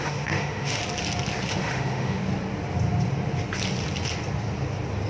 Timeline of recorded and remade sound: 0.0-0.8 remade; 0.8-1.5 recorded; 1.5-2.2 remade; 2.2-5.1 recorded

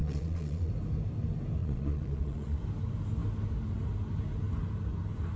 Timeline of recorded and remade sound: 0.0-0.7 remade; 0.7-1.6 recorded; 1.6-2.6 remade; 2.6-5.4 recorded

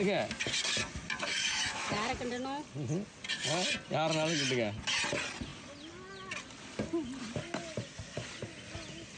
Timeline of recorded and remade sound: 0.0-1.4 recorded; 1.4-1.9 remade; 1.9-9.2 recorded

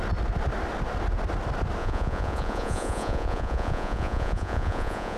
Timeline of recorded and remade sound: 0.0-1.8 recorded; 1.8-5.2 remade

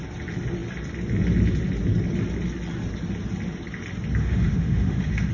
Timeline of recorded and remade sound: 0.0-4.2 recorded; 4.2-5.3 remade

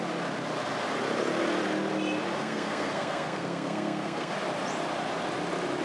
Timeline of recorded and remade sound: 0.0-2.4 recorded; 2.4-4.3 remade; 4.3-5.8 recorded

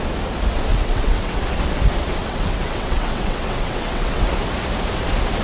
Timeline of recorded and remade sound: 0.0-0.7 recorded; 0.7-1.4 remade; 1.4-2.2 recorded; 2.2-4.3 remade; 4.3-5.4 recorded

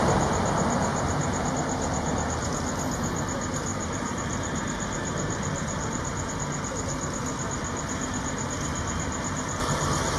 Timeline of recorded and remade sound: 0.0-0.9 recorded; 0.9-1.5 remade; 1.5-3.7 recorded; 3.7-6.3 remade; 6.3-10.2 recorded